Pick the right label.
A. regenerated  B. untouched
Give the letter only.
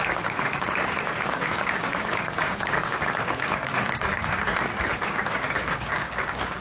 A